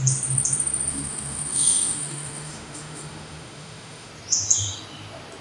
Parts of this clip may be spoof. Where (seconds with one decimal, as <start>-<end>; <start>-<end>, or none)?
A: 0.9-4.1

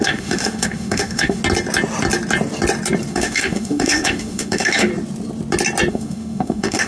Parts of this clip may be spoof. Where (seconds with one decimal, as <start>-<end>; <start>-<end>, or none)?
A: 0.0-1.4; 3.1-4.9; 5.9-6.9

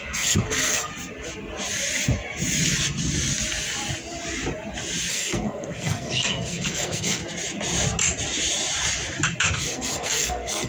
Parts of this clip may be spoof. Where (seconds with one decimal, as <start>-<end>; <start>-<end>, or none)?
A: 0.0-0.9; 5.1-7.2; 9.4-10.7

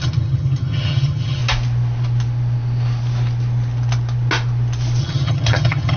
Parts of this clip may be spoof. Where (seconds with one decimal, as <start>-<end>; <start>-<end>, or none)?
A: 0.0-1.4; 5.0-6.0

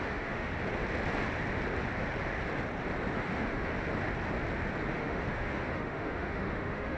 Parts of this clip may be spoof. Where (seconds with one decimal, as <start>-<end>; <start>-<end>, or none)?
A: 0.0-0.5; 3.1-3.7; 4.9-7.0

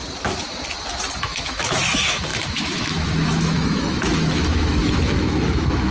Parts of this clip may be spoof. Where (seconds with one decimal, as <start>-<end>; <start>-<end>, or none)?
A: 1.2-5.9

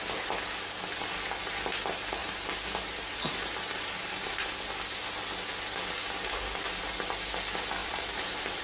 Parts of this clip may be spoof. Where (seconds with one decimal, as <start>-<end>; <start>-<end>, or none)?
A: 2.2-4.5; 7.8-8.6